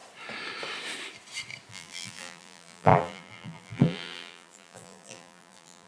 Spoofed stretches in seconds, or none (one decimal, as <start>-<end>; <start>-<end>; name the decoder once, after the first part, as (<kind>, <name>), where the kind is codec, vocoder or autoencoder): 1.7-5.9 (vocoder, BigVGAN v2)